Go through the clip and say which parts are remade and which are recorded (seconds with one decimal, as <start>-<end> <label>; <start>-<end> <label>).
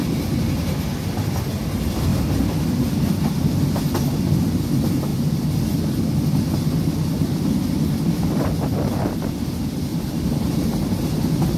0.0-0.8 remade; 0.8-9.9 recorded; 9.9-10.7 remade; 10.7-11.6 recorded